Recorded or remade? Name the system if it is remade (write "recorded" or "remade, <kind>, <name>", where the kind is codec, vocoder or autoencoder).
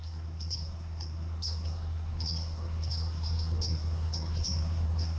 remade, codec, SNAC